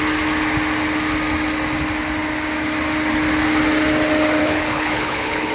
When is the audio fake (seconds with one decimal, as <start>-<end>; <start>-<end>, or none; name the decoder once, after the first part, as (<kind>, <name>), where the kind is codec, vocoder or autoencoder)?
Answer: 4.4-5.5 (codec, HILCodec)